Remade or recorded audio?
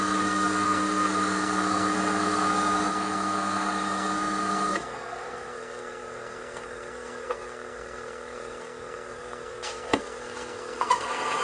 remade